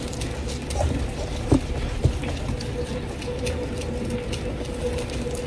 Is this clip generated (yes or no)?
no